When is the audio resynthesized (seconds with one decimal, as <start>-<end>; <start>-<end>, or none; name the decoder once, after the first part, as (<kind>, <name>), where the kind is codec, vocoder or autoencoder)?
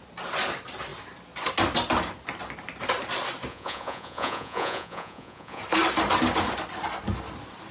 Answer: 3.5-5.6 (vocoder, Vocos)